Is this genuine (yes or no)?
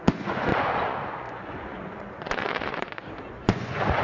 no